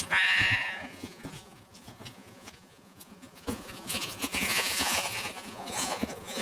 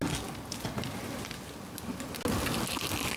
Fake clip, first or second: first